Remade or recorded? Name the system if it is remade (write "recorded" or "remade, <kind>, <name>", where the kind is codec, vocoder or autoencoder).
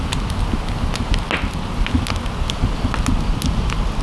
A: recorded